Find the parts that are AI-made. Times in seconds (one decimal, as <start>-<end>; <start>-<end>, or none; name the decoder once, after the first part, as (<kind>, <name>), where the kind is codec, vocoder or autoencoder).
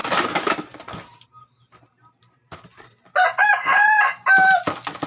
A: 0.0-3.1 (vocoder, BigVGAN v2)